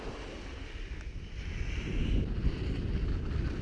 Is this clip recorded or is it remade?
recorded